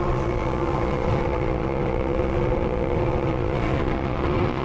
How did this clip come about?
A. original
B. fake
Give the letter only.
B